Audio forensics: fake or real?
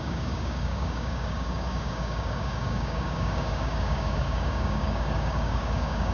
fake